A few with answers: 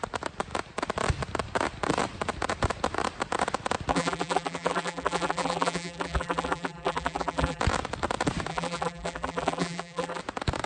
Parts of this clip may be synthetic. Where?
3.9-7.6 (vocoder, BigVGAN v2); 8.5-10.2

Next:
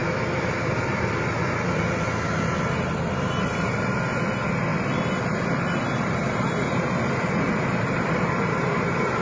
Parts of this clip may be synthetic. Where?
0.0-1.9 (vocoder, BigVGAN v2); 4.7-8.5

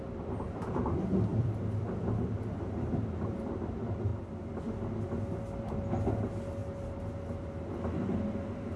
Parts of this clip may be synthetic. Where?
1.3-2.0 (vocoder, BigVGAN v2); 4.1-4.6; 6.6-7.1

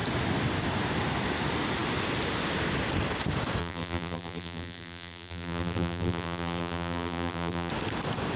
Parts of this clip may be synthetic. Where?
3.6-7.7 (vocoder, BigVGAN v2)

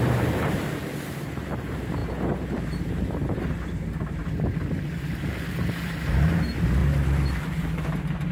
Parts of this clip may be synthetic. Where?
0.0-4.2 (vocoder, BigVGAN v2); 4.9-6.8; 7.3-8.3